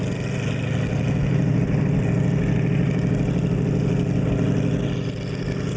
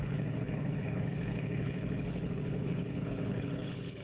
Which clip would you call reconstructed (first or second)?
second